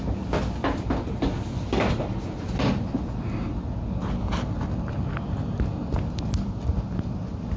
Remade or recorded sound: recorded